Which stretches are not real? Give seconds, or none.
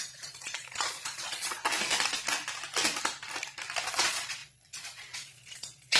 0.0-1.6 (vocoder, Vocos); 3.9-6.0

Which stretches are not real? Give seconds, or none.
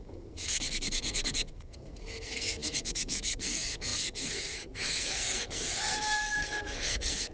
0.0-7.3 (codec, SNAC)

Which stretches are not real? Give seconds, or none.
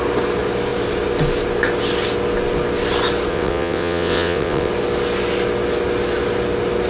3.3-4.7 (vocoder, WaveNeXt)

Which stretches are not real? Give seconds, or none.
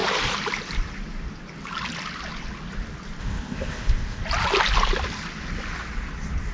3.2-4.2 (codec, ZipCodec)